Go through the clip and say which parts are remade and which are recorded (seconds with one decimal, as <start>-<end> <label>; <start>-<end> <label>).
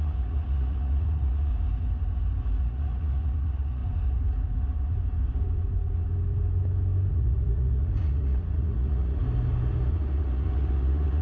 0.0-1.5 remade; 1.5-2.6 recorded; 2.6-3.8 remade; 3.8-7.1 recorded; 7.1-9.2 remade; 9.2-9.9 recorded; 9.9-11.2 remade